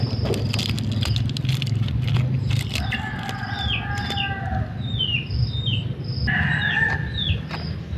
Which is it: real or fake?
real